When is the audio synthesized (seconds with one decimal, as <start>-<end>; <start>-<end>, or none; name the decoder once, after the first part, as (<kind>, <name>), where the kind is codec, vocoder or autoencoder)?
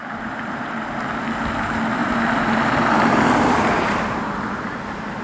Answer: 0.0-1.0 (vocoder, BigVGAN v2); 2.0-4.8